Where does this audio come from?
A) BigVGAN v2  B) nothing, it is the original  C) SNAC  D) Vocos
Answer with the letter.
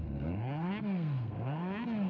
C